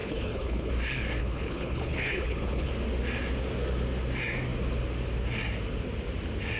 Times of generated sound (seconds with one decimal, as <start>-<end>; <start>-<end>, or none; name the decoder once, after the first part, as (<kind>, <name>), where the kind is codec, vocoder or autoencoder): 0.0-0.7 (codec, HILCodec); 1.2-2.7